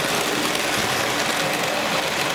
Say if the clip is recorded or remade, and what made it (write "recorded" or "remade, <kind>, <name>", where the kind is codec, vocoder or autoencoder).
recorded